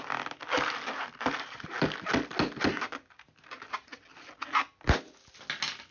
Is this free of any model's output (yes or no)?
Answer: yes